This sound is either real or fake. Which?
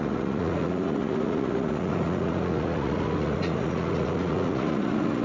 fake